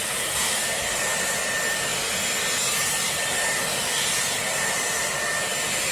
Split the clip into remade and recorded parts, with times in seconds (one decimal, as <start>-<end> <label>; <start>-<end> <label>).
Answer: 0.0-5.9 recorded